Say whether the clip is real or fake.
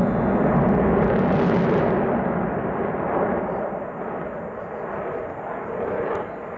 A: real